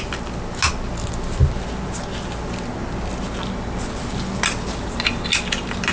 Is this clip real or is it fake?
real